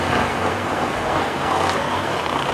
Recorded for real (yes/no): no